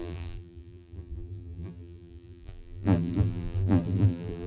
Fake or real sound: fake